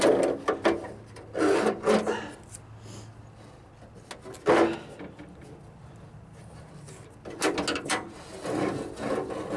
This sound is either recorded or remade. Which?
recorded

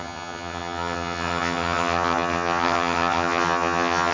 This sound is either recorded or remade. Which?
remade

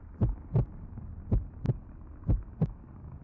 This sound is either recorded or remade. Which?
recorded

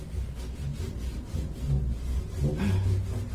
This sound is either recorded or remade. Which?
recorded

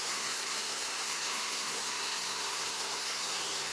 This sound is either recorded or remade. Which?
remade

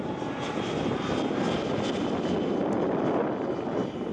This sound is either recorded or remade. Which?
recorded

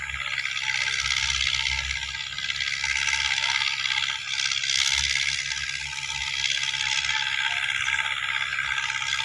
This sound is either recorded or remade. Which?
recorded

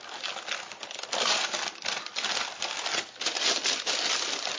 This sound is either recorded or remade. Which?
recorded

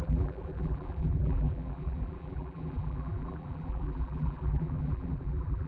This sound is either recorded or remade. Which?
remade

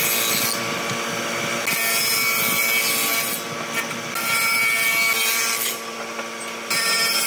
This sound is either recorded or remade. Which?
recorded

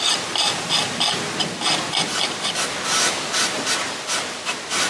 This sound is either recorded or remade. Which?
recorded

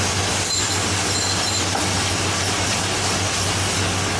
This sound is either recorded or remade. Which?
recorded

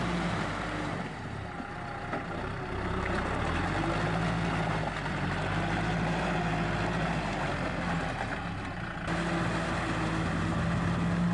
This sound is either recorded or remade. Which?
recorded